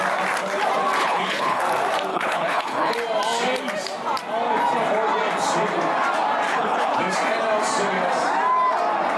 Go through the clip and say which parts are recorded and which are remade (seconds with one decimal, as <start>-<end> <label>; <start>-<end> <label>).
0.0-1.0 recorded; 1.0-1.6 remade; 1.6-2.1 recorded; 2.1-2.9 remade; 2.9-6.5 recorded; 6.5-7.0 remade; 7.0-9.2 recorded